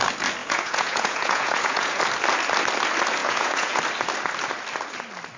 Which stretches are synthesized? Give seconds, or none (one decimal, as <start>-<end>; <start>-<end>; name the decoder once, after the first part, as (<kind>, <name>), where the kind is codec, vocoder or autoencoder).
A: 0.4-2.0 (vocoder, Vocos); 3.2-3.8